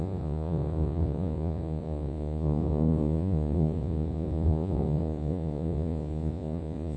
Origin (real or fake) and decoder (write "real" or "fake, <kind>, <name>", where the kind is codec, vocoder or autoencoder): fake, vocoder, Vocos